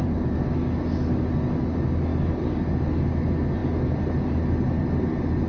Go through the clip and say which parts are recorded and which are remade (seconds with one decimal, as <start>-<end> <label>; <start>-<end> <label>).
0.0-5.5 recorded